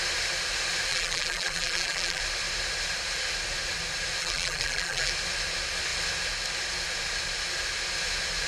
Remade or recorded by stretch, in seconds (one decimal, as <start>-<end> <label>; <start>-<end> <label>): 0.0-0.9 recorded; 0.9-2.2 remade; 2.2-4.2 recorded; 4.2-5.1 remade; 5.1-8.5 recorded